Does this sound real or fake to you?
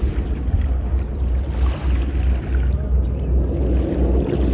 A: real